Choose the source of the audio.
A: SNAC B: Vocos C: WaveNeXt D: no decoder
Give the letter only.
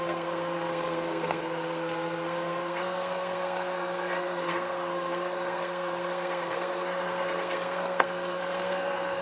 A